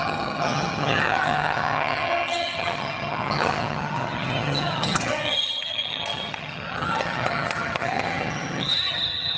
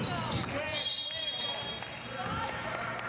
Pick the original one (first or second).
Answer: second